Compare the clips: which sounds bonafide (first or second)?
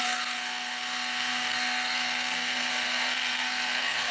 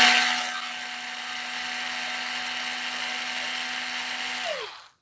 second